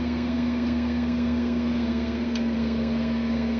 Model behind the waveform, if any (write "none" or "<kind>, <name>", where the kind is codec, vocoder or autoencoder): codec, SNAC